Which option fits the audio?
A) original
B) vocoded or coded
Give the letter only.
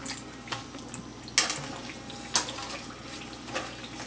A